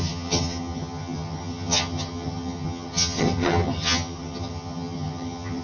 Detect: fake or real fake